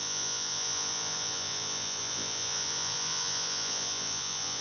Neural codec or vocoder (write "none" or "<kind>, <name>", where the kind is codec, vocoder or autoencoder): vocoder, Vocos